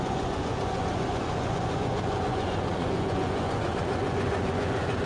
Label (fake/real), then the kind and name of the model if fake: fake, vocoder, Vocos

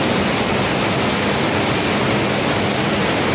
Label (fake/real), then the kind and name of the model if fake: real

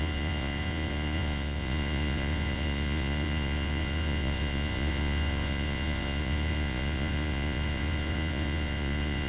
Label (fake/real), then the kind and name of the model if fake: fake, vocoder, Vocos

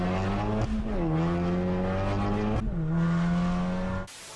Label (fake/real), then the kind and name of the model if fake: real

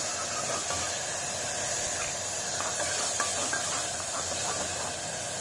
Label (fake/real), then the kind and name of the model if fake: real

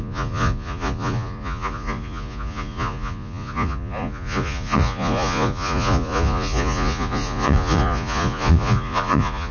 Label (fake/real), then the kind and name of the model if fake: fake, vocoder, Vocos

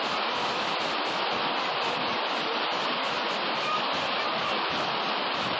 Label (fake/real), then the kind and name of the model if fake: real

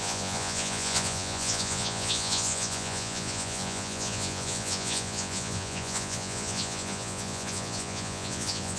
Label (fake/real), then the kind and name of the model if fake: fake, vocoder, Vocos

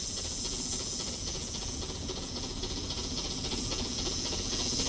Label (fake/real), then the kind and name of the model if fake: fake, vocoder, Vocos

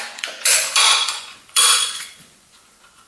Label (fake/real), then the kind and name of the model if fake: fake, vocoder, Vocos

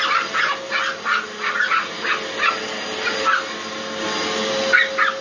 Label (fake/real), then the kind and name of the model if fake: real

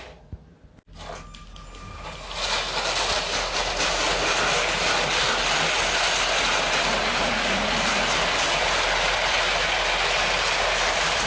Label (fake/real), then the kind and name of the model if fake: real